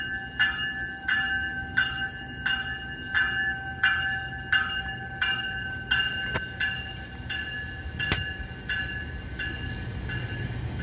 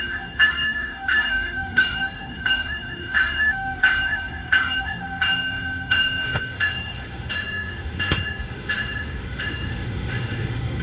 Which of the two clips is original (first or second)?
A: first